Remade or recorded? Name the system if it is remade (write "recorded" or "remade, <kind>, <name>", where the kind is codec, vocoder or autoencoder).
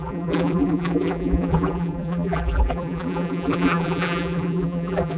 remade, vocoder, BigVGAN v2